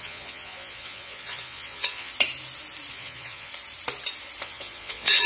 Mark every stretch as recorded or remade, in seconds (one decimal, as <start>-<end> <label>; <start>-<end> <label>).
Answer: 0.0-2.1 remade; 2.1-2.9 recorded; 2.9-3.5 remade; 3.5-4.4 recorded; 4.4-5.3 remade